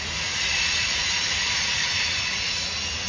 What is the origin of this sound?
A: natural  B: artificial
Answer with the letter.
B